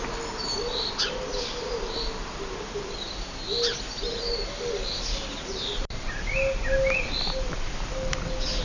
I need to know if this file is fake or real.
real